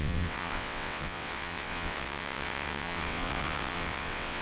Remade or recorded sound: remade